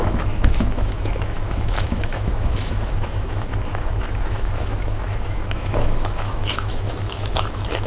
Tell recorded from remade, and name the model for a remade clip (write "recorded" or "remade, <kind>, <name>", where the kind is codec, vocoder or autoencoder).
remade, autoencoder, DAC-VAE